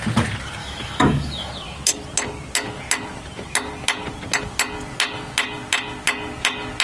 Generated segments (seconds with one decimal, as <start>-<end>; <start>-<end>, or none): 0.6-1.5